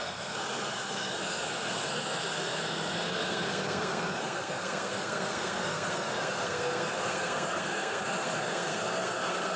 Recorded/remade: remade